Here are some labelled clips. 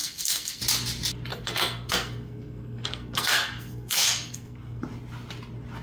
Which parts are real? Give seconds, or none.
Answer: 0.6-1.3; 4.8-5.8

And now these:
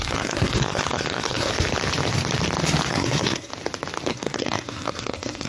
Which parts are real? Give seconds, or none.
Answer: 1.5-2.9; 3.5-4.1

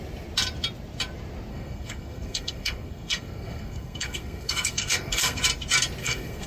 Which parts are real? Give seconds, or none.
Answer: 0.0-1.5; 5.4-6.0

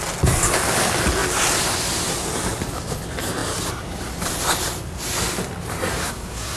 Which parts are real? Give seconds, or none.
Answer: 0.0-5.9